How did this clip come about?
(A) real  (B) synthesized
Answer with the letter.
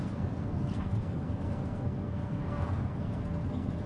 B